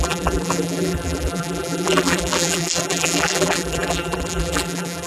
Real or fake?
fake